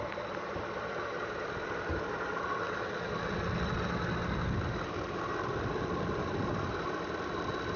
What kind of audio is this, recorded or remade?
recorded